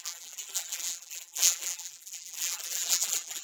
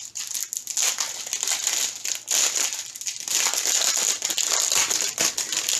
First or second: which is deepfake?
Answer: first